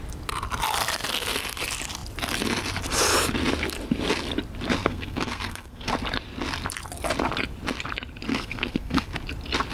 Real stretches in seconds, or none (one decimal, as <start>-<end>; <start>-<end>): 0.0-4.8; 5.9-8.3; 9.1-9.7

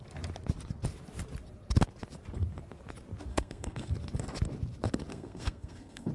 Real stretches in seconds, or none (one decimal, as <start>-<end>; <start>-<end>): 0.0-3.3; 3.9-5.1

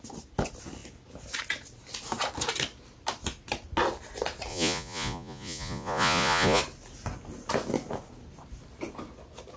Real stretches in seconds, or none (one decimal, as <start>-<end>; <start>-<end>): 0.0-4.5; 6.6-9.6